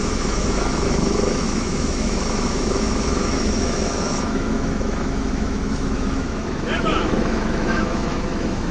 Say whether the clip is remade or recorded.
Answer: remade